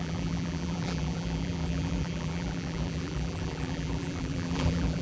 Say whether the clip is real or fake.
fake